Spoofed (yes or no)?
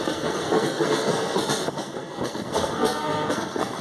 yes